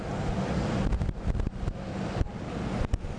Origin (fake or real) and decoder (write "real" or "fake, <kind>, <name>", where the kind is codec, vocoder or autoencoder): real